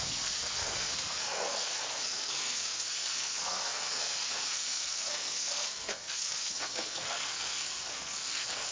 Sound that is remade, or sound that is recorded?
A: remade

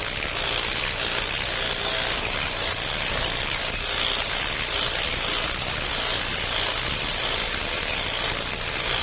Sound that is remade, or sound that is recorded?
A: recorded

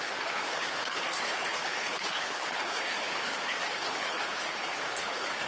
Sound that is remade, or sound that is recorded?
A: remade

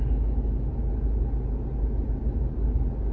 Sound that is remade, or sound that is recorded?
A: recorded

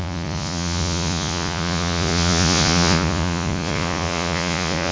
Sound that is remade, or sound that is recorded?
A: remade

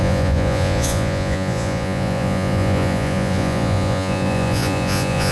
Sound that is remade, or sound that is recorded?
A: remade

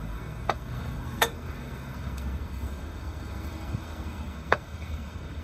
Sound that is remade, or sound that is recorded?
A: remade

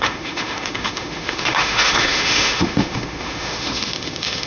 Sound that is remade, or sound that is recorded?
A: remade